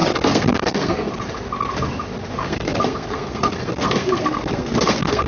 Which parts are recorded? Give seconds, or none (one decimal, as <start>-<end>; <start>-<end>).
1.1-2.4